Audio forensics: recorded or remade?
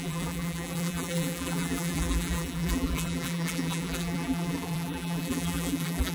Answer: remade